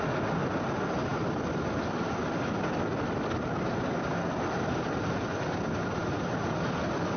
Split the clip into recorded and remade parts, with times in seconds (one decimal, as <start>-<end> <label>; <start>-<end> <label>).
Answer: 0.0-7.2 recorded